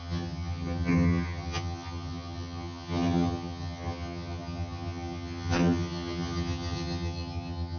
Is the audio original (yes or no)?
no